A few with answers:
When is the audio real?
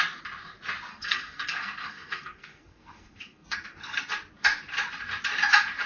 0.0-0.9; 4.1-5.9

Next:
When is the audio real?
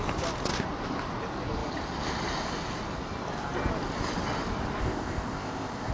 0.0-4.8